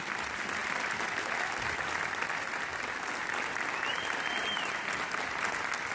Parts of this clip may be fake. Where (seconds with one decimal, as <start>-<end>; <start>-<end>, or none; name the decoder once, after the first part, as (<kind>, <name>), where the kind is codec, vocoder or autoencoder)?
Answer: none